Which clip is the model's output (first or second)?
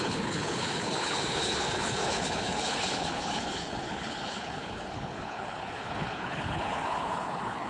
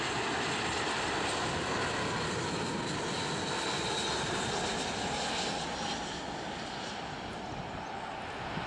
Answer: first